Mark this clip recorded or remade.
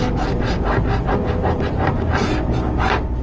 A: remade